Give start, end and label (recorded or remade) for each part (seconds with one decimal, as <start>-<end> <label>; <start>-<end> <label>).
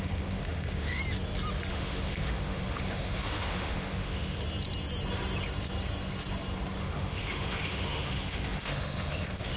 0.0-1.0 remade; 1.0-1.7 recorded; 1.7-4.4 remade; 4.4-6.8 recorded; 6.8-9.6 remade